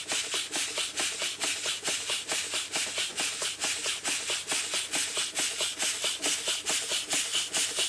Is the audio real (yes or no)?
yes